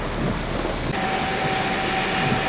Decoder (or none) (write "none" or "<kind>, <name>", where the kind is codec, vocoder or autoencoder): none